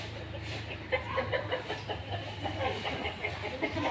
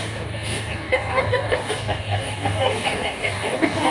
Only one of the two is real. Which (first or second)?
first